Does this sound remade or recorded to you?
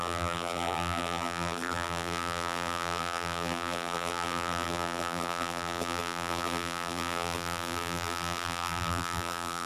remade